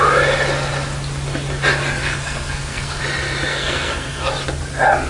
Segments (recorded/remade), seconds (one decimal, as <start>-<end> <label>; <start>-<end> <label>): 0.0-2.0 recorded; 2.0-3.0 remade; 3.0-3.5 recorded; 3.5-4.3 remade; 4.3-5.1 recorded